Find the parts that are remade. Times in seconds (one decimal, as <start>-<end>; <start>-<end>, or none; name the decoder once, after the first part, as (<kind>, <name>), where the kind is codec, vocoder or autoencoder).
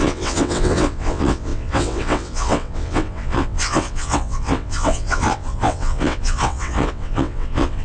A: 0.0-7.8 (vocoder, WaveNeXt)